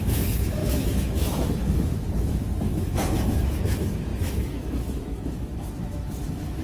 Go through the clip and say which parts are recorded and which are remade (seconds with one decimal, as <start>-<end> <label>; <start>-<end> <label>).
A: 0.0-6.6 remade